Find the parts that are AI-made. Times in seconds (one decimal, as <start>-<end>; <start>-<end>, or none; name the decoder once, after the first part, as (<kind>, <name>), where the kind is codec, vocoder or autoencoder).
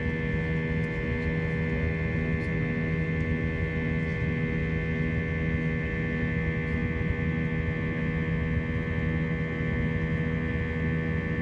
none